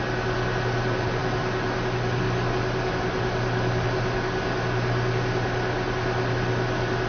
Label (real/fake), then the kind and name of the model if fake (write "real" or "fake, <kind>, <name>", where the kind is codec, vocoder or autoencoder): real